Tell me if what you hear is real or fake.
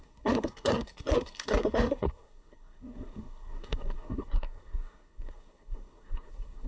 fake